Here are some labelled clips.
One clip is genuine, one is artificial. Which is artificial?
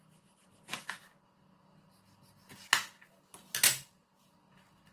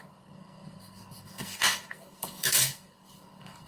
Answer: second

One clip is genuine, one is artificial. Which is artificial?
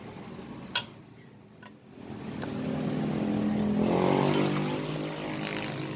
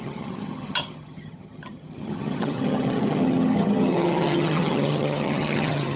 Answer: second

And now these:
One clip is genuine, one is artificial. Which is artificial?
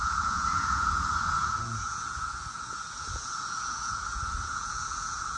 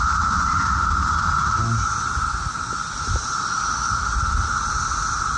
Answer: first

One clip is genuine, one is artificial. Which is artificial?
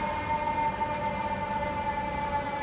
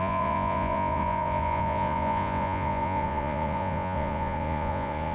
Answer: second